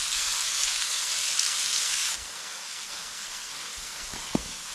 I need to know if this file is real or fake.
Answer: fake